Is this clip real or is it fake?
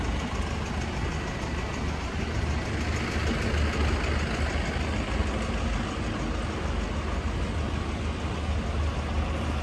real